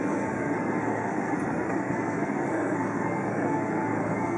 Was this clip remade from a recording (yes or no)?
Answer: yes